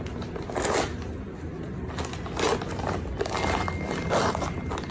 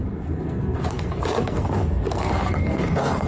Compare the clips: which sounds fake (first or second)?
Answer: second